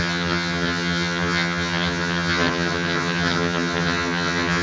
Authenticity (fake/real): fake